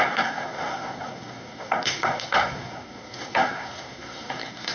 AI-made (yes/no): yes